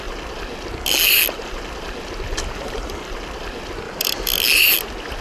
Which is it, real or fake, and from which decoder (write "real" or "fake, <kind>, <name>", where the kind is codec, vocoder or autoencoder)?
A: real